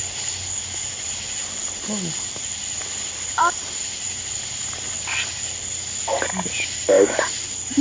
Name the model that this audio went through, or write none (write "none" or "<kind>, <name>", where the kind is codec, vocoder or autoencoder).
none